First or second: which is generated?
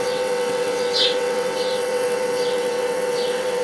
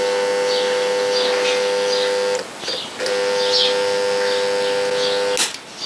first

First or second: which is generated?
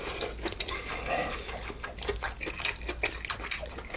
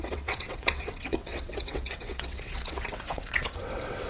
second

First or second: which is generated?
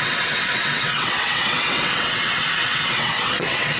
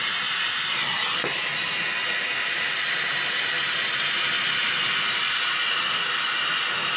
first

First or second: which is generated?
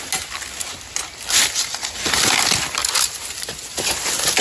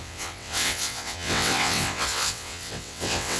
second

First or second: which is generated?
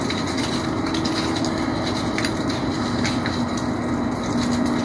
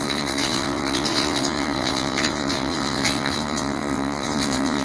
second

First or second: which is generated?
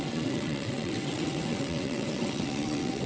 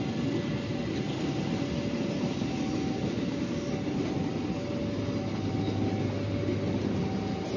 first